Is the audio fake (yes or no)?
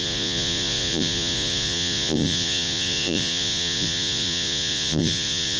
yes